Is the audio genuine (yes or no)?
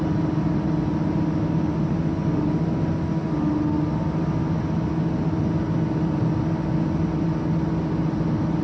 yes